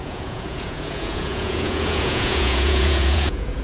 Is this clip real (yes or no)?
no